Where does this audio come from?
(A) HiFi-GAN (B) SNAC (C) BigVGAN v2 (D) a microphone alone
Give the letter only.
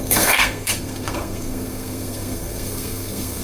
B